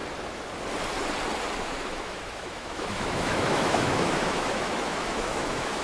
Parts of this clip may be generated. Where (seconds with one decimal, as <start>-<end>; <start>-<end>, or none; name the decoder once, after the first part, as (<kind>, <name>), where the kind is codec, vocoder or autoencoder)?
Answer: 1.6-5.8 (autoencoder, DAC-VAE)